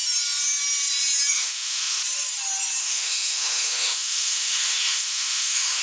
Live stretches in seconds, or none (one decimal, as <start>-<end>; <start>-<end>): 0.0-1.3; 2.0-2.8